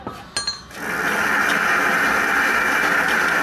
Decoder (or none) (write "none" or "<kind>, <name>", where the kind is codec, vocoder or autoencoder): none